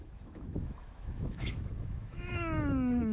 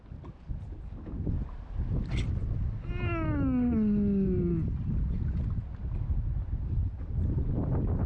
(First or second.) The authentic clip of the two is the second